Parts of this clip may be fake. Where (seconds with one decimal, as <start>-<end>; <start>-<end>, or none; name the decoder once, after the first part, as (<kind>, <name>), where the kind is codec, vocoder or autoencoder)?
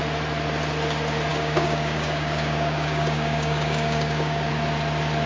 1.3-4.5 (codec, DAC)